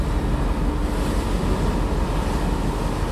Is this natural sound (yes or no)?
yes